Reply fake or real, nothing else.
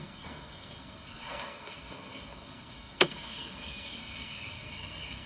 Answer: fake